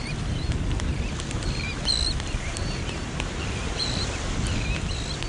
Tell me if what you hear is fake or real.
real